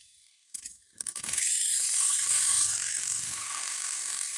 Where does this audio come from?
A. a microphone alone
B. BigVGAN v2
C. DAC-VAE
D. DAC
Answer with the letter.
D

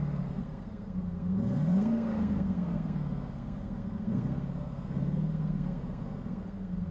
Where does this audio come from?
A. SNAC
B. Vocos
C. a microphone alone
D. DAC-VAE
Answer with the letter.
A